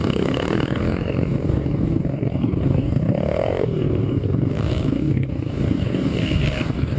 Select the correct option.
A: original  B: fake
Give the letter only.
B